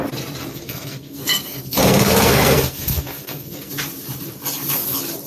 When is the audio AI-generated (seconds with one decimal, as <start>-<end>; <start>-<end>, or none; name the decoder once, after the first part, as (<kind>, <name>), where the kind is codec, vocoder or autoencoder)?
0.5-3.7 (codec, SNAC)